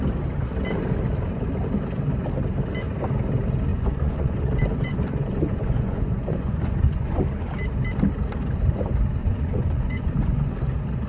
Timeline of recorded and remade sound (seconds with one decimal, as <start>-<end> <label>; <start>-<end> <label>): 0.0-3.7 recorded; 3.7-7.2 remade; 7.2-9.2 recorded; 9.2-10.5 remade; 10.5-11.1 recorded